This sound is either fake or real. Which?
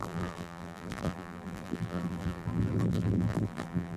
fake